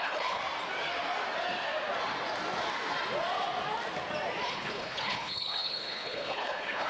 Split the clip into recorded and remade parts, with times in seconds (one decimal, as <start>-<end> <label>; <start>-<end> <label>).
0.0-0.4 remade; 0.4-4.5 recorded; 4.5-6.9 remade